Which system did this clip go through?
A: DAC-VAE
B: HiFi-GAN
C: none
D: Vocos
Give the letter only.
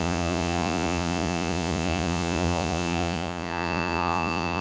D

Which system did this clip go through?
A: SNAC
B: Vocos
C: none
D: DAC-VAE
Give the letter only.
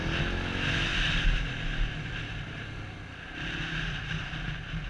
C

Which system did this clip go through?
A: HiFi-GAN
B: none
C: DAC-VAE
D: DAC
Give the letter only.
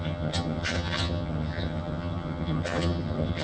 A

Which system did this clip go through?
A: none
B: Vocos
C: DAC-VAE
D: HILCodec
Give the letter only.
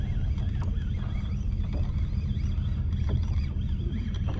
A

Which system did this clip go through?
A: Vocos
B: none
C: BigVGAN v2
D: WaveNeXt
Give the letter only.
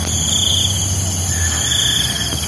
B